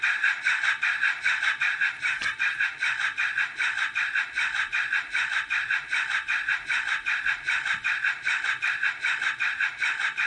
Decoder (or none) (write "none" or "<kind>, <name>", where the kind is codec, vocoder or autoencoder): none